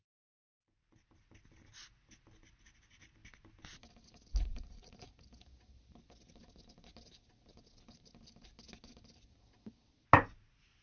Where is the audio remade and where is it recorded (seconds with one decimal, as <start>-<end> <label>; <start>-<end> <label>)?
0.0-4.5 recorded; 4.5-5.2 remade; 5.2-10.8 recorded